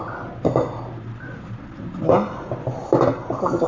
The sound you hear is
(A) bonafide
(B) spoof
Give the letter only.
A